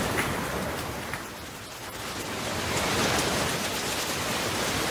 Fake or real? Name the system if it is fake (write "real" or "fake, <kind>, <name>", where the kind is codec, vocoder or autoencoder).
real